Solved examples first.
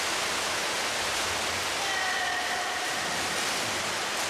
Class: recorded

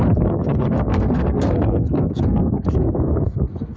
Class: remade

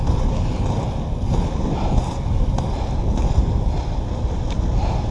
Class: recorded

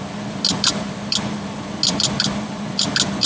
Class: recorded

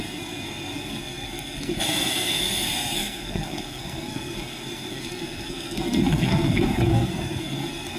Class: remade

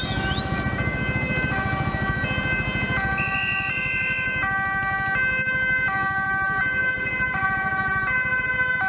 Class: recorded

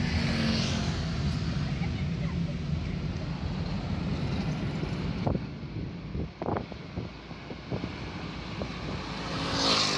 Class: recorded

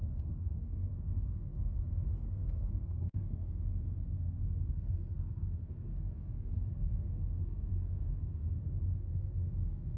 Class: remade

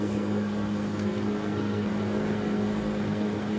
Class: remade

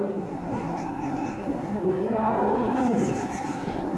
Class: remade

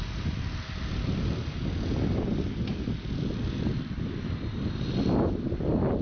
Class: recorded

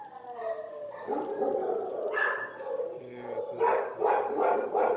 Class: recorded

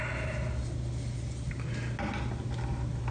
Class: recorded